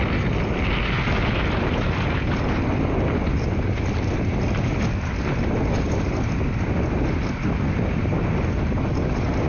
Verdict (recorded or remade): recorded